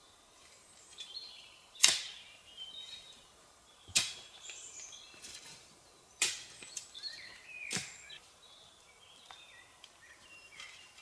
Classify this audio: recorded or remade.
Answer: remade